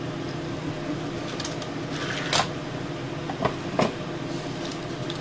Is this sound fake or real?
real